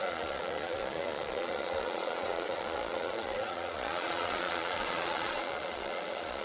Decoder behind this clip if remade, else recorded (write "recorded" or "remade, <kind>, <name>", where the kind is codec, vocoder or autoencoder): remade, vocoder, Vocos